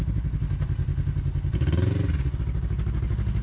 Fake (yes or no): no